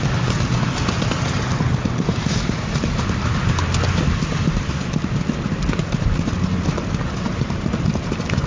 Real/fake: real